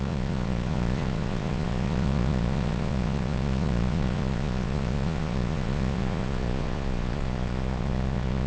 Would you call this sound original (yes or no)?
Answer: no